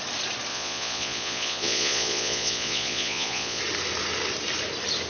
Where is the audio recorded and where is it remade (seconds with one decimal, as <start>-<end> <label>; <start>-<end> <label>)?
0.0-0.5 recorded; 0.5-3.6 remade; 3.6-5.1 recorded